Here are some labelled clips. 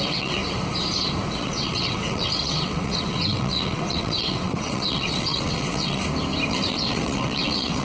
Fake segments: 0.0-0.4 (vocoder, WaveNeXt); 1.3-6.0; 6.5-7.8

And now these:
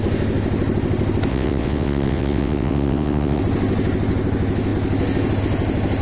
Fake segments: 1.3-3.4 (vocoder, WaveNeXt)

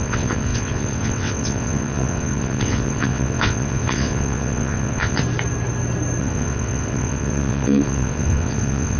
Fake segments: 0.0-5.2 (vocoder, WaveNeXt); 6.2-9.0

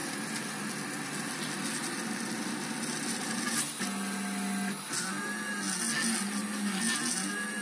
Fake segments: none

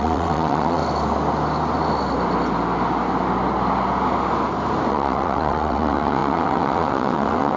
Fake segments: 0.0-0.8 (vocoder, WaveNeXt); 4.9-7.6